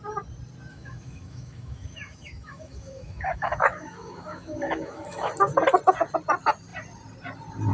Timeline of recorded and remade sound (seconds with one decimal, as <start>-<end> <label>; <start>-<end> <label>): 0.0-0.7 recorded; 0.7-5.3 remade; 5.3-7.7 recorded